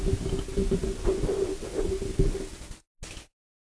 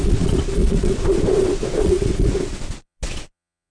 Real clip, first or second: first